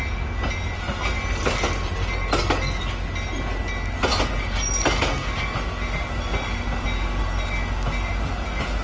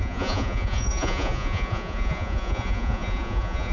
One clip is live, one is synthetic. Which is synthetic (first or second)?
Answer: second